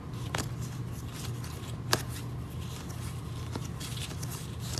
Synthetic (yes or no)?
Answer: no